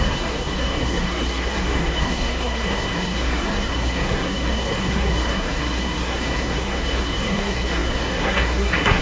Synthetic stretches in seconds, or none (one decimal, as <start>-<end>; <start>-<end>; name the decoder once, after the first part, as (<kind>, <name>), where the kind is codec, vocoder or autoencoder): 0.0-9.0 (codec, SNAC)